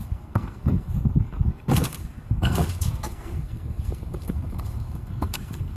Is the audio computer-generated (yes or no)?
yes